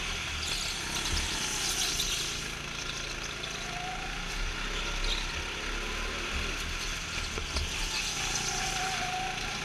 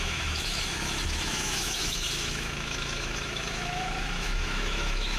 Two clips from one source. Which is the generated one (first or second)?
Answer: second